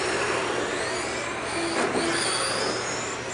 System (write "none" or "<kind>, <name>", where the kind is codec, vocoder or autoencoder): none